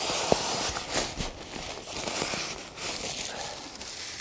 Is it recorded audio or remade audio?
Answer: recorded